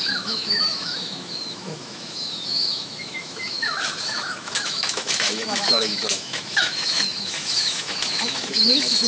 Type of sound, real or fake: fake